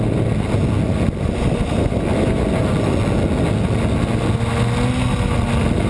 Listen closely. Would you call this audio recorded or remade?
recorded